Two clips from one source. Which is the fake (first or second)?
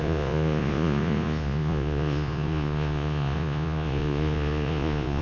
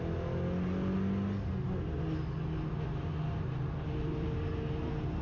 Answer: first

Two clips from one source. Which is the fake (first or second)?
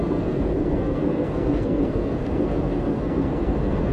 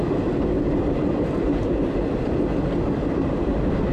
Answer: first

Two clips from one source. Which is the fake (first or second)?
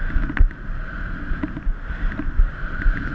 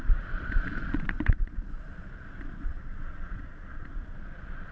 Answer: second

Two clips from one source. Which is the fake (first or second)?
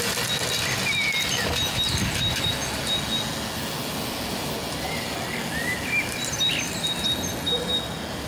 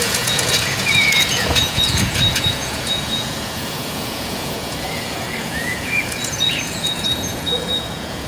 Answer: second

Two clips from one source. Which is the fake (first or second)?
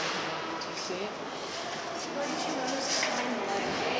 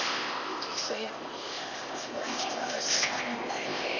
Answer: second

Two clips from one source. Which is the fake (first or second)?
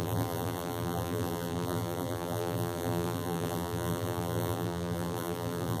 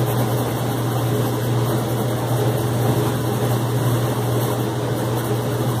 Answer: first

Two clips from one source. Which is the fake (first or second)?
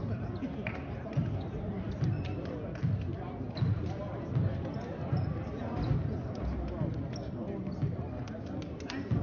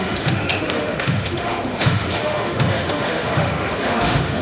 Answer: second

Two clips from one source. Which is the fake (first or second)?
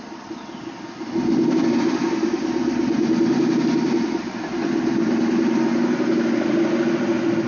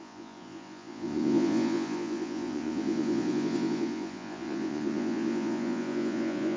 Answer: second